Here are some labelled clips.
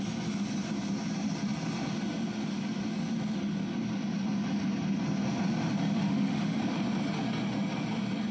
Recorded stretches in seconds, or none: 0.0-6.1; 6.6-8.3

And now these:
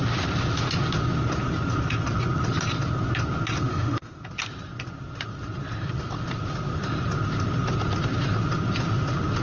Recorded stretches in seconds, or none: 0.0-3.7; 4.2-9.4

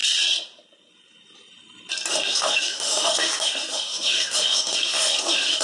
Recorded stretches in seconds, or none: 0.0-2.1

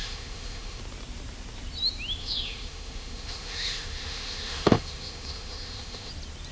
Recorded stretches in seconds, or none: 0.8-2.2; 6.1-6.5

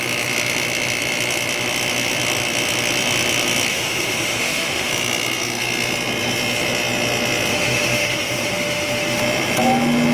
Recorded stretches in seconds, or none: 0.0-3.7; 4.9-7.5; 9.2-10.1

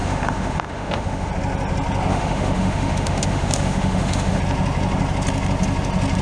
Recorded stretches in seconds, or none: 1.3-2.1; 4.4-6.2

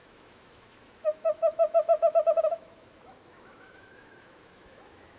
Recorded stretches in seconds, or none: none